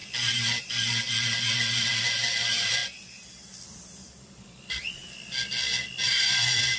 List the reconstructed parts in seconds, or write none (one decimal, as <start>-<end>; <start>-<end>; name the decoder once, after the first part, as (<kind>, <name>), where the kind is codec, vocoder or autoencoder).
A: 0.0-5.0 (vocoder, BigVGAN v2); 5.9-6.8